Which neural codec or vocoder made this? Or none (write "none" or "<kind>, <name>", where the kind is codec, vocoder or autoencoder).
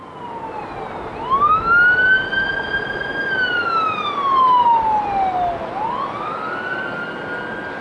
none